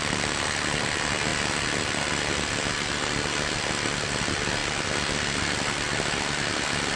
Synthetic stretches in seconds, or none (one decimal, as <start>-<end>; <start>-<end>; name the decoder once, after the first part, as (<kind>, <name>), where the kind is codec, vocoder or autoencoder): none